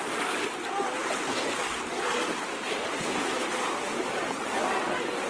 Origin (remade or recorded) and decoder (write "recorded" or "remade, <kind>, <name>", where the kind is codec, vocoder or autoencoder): recorded